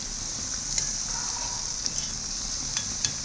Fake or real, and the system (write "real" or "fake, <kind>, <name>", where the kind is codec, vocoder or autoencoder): fake, vocoder, BigVGAN v2